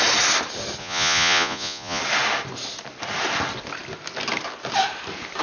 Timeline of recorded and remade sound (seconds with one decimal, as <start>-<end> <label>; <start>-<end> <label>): 0.0-0.8 recorded; 0.8-2.0 remade; 2.0-5.4 recorded